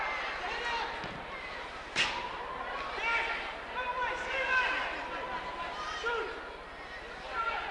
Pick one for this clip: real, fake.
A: real